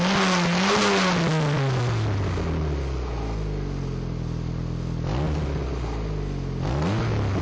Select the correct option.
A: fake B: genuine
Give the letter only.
B